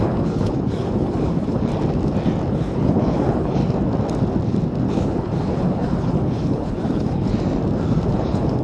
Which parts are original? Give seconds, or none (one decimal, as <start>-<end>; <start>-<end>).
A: 1.7-2.5; 3.6-4.9; 7.3-8.1